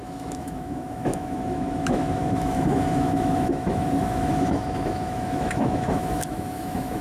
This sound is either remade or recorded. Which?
remade